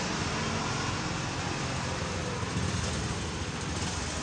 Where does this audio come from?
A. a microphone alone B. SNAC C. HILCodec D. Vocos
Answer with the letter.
A